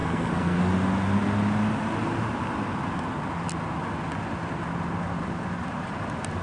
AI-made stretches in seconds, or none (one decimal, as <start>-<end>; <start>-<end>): 0.0-0.6